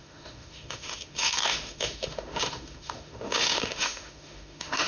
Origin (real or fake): fake